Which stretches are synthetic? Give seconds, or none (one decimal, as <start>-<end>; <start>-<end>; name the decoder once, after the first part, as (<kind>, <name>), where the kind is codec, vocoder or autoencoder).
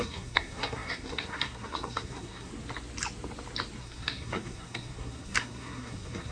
0.0-2.5 (codec, SNAC); 3.8-6.3